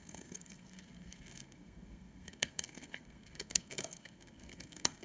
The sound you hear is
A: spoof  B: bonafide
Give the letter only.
A